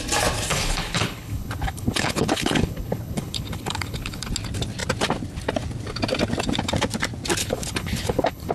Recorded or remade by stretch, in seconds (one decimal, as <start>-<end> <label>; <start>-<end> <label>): 0.0-0.5 recorded; 0.5-4.3 remade; 4.3-7.4 recorded; 7.4-8.5 remade